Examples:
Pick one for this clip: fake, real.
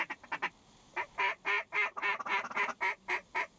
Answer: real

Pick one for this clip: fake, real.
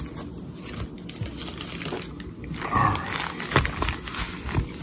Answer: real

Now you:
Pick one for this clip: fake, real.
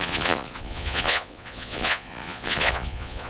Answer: fake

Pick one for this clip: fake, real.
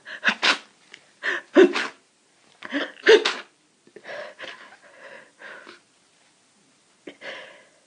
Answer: real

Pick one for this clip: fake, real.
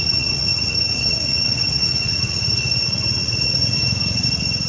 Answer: fake